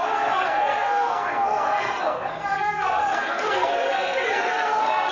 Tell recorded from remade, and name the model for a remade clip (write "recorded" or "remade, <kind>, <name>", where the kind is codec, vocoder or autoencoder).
remade, codec, SNAC